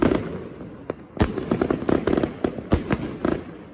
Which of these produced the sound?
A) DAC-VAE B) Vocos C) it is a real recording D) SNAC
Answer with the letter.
C